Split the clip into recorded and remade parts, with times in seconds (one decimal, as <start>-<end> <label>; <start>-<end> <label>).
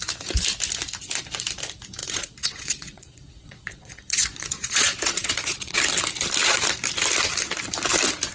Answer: 0.0-2.0 recorded; 2.0-5.8 remade; 5.8-8.3 recorded